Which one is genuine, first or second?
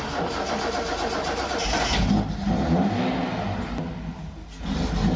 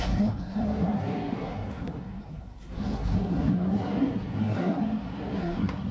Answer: first